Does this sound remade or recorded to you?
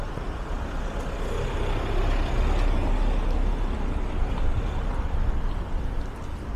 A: recorded